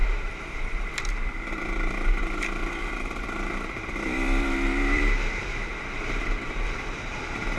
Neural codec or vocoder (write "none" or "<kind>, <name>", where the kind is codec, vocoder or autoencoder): vocoder, BigVGAN v2